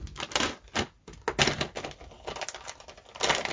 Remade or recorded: recorded